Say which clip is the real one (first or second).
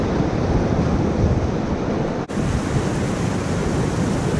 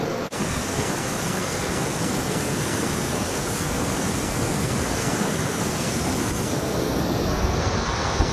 first